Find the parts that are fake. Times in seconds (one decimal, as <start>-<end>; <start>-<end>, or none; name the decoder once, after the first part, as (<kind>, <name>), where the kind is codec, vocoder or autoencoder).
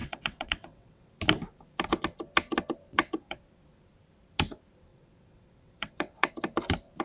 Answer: 0.0-1.1 (vocoder, WaveNeXt); 2.9-3.4; 4.9-6.3